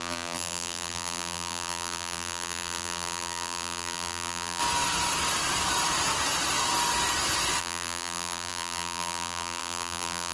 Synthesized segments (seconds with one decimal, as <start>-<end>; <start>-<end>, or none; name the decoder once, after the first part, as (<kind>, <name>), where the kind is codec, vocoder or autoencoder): 0.0-4.6 (vocoder, BigVGAN v2); 7.6-10.3

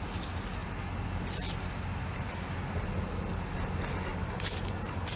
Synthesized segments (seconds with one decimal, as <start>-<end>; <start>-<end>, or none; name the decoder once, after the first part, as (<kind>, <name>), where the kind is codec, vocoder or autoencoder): 4.1-5.2 (vocoder, BigVGAN v2)

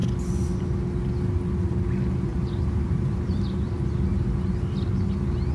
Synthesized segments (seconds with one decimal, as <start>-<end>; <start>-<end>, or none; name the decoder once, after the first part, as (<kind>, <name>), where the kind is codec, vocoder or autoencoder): 2.3-3.7 (vocoder, BigVGAN v2)

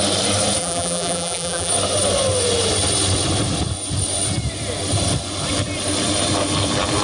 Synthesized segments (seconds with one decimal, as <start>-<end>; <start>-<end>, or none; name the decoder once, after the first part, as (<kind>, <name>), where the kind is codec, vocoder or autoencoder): 0.6-1.7 (vocoder, BigVGAN v2)

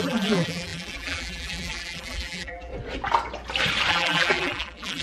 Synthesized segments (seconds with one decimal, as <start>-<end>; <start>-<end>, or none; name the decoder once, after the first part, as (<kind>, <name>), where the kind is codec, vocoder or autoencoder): 0.0-2.7 (vocoder, BigVGAN v2); 3.9-5.0

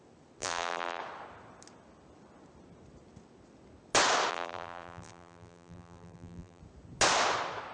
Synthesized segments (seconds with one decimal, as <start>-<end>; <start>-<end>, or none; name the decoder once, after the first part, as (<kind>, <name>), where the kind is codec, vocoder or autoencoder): 0.4-1.0 (vocoder, BigVGAN v2); 4.3-6.6

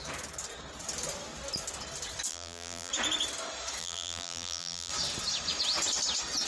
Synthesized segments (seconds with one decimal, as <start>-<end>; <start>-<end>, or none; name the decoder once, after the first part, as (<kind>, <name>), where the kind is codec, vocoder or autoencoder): 2.3-2.9 (vocoder, BigVGAN v2); 3.8-4.9